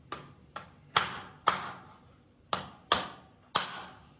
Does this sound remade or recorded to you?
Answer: recorded